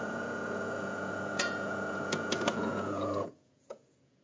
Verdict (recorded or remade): remade